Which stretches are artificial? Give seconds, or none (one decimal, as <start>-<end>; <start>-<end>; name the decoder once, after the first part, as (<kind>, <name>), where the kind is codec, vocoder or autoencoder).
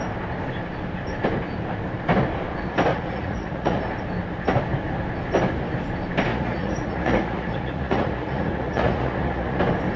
2.9-3.8 (vocoder, Vocos); 6.3-9.6